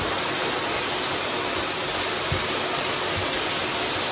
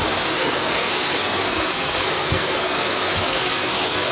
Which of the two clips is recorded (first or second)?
first